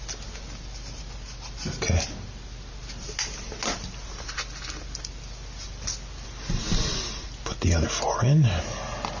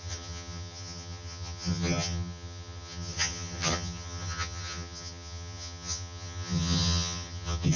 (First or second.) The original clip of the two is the first